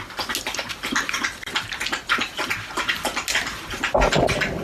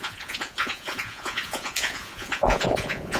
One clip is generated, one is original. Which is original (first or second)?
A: first